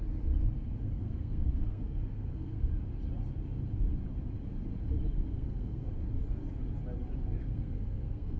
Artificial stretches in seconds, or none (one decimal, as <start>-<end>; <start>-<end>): 0.8-2.7; 5.3-5.9; 7.4-8.4